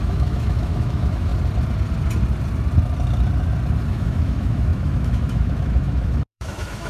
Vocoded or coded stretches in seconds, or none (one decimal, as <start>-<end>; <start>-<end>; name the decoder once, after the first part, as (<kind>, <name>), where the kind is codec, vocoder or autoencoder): 0.0-1.3 (autoencoder, DAC-VAE); 3.9-6.9